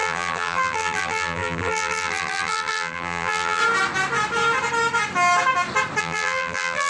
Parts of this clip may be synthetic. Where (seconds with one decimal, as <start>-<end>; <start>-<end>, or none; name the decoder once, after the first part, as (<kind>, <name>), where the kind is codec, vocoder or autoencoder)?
0.0-3.6 (vocoder, BigVGAN v2); 6.0-6.9